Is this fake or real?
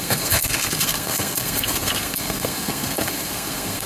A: fake